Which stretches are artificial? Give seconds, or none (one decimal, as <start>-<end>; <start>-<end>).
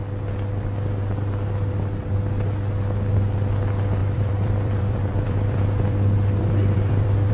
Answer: 4.0-7.3